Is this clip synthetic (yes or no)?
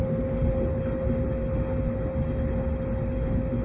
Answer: yes